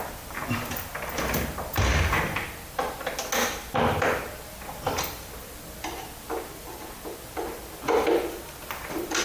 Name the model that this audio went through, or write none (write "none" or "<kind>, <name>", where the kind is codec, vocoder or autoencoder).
none